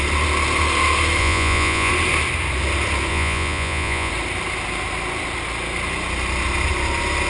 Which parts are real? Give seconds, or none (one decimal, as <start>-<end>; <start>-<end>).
0.0-1.2; 1.9-3.1; 4.1-7.3